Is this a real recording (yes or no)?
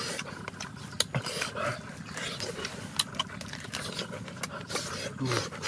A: yes